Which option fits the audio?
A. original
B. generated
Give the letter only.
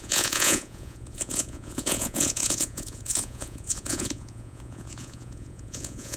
B